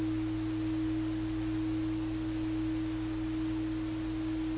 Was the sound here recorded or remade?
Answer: recorded